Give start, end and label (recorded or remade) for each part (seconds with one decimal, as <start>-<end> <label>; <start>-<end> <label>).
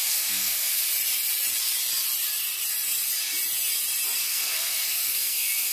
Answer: 0.0-0.8 remade; 0.8-4.2 recorded; 4.2-5.7 remade